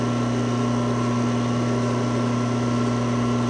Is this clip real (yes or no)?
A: yes